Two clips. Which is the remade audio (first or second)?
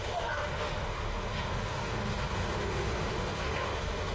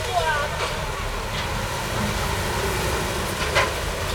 first